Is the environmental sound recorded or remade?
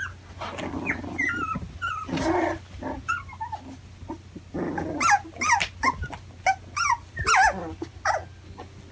recorded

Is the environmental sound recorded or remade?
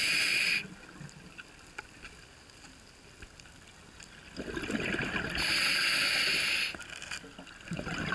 recorded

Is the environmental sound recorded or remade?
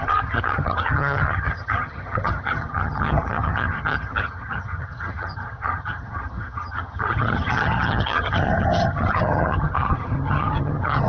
remade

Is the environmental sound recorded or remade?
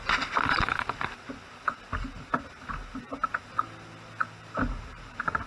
recorded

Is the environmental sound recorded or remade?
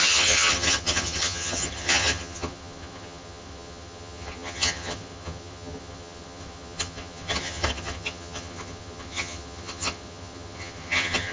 remade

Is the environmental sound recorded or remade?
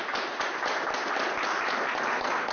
recorded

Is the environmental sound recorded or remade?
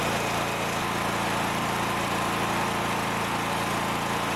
recorded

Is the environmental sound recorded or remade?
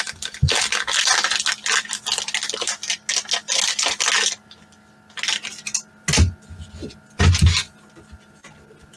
recorded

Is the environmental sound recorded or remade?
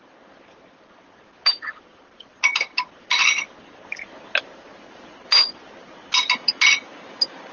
recorded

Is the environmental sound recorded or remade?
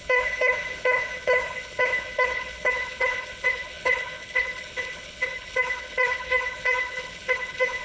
remade